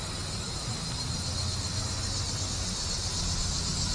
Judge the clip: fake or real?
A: real